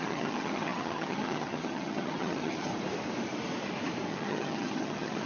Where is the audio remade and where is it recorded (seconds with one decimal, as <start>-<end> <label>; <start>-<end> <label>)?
0.0-2.7 remade; 2.7-4.1 recorded; 4.1-5.3 remade